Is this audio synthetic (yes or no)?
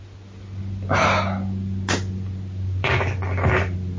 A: no